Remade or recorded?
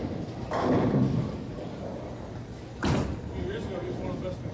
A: recorded